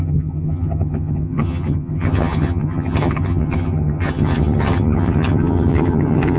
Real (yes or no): no